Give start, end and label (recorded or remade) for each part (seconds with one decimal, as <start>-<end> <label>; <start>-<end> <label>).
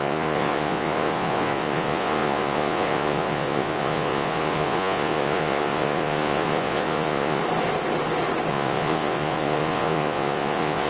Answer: 0.0-7.4 remade; 7.4-8.5 recorded; 8.5-10.9 remade